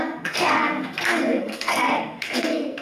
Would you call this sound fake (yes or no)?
yes